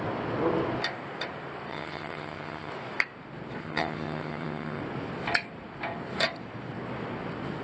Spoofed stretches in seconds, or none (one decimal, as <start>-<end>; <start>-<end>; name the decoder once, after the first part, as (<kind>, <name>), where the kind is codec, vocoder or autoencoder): 1.7-2.7 (vocoder, HiFi-GAN); 3.6-4.8